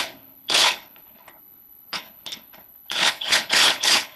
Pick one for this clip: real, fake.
fake